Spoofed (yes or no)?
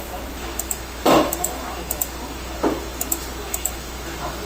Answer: yes